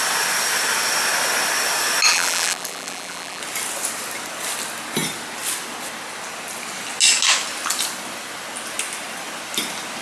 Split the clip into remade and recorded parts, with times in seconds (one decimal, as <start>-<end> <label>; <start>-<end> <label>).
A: 0.0-2.1 recorded; 2.1-3.4 remade; 3.4-10.0 recorded